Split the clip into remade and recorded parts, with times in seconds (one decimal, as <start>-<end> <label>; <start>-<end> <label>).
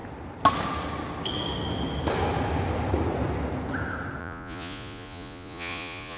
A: 0.0-4.2 recorded; 4.2-6.2 remade